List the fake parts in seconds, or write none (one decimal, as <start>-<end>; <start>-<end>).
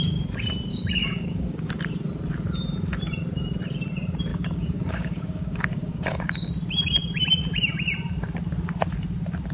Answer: 0.7-1.7; 4.3-6.5